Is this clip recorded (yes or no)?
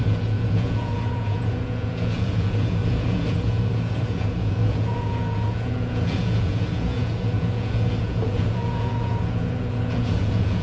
no